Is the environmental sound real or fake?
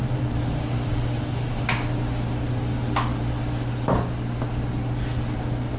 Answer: real